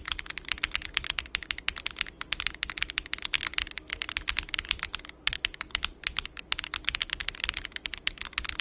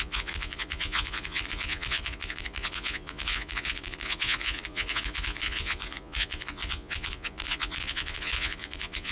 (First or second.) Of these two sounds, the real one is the first